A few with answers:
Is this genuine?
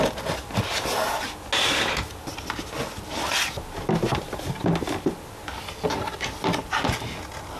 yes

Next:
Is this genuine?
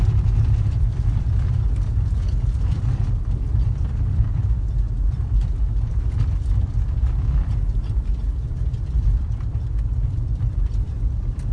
no